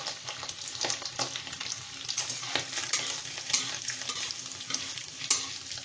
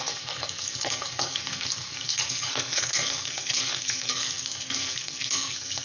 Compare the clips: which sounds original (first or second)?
first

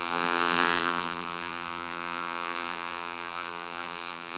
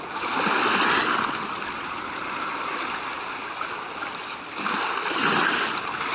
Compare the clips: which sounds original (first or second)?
second